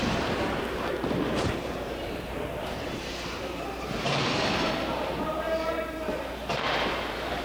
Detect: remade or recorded remade